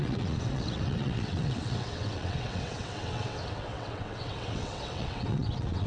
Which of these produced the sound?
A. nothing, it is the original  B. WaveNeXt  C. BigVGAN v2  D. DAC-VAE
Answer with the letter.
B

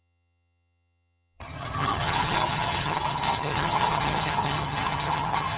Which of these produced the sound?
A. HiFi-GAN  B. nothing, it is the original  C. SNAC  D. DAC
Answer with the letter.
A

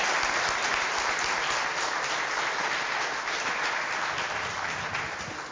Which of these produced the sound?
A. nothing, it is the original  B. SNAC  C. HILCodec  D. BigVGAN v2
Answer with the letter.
A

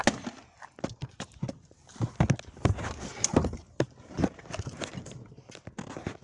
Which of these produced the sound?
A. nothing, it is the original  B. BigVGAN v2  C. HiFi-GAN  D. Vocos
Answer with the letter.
A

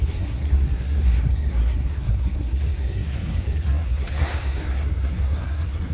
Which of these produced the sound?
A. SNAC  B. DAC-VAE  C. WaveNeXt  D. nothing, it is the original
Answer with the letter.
A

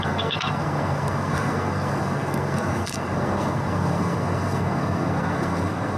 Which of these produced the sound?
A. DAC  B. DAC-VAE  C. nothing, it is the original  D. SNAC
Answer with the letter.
D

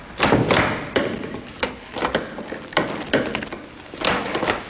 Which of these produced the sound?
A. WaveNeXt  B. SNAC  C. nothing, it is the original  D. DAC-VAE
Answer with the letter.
C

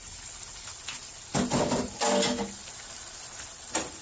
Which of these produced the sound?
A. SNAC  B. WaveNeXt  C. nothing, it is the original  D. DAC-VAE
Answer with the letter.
C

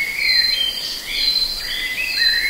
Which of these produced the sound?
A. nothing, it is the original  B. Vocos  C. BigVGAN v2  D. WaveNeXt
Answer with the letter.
A